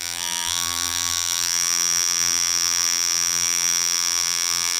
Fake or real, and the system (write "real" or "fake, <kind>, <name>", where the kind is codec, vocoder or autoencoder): fake, vocoder, BigVGAN v2